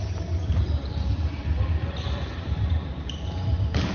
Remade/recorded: remade